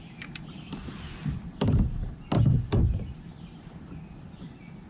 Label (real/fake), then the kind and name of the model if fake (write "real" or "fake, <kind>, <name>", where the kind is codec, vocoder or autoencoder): real